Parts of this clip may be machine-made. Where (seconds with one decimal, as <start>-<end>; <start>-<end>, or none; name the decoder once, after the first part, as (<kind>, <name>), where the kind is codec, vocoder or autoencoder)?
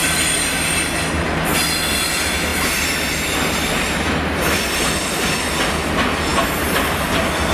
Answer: 0.0-1.6 (vocoder, BigVGAN v2); 2.5-3.7